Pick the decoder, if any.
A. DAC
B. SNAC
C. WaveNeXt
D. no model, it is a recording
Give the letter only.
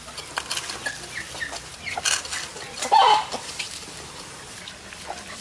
D